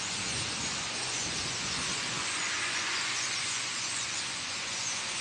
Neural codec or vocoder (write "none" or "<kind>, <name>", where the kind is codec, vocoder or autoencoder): vocoder, Vocos